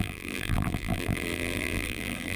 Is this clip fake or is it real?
fake